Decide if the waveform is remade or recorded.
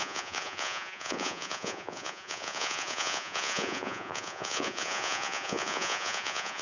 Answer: remade